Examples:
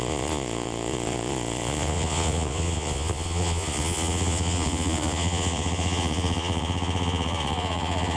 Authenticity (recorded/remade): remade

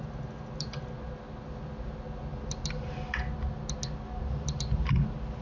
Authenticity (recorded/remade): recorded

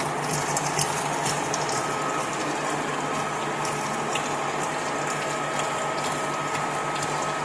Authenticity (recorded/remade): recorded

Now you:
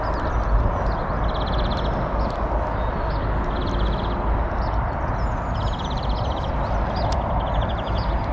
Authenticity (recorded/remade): recorded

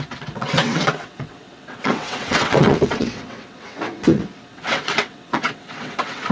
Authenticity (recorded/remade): remade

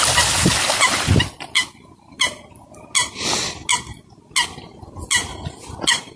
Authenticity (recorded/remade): recorded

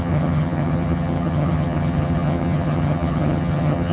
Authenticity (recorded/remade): remade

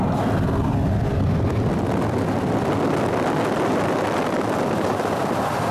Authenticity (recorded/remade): recorded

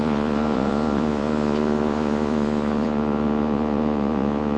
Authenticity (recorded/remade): remade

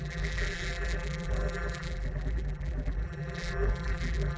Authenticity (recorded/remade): remade